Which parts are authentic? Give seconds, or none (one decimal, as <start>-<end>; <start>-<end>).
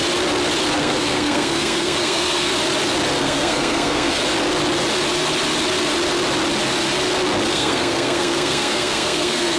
0.0-0.8; 2.5-3.2; 4.2-7.5